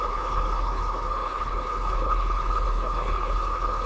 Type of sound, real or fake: fake